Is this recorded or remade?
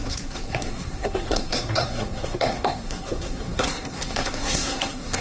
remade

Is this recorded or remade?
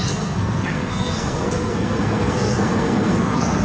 remade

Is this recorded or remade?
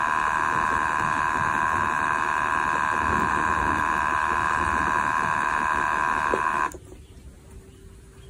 recorded